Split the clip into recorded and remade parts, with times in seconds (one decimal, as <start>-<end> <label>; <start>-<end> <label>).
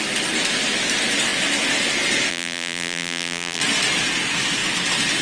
0.0-2.3 recorded; 2.3-3.6 remade; 3.6-5.2 recorded